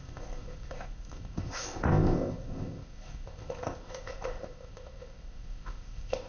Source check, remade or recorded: remade